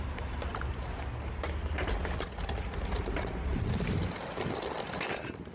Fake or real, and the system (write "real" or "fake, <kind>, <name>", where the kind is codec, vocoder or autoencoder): real